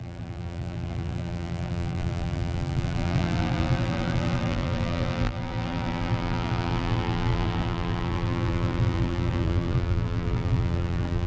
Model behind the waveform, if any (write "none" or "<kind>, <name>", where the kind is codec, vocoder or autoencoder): vocoder, BigVGAN v2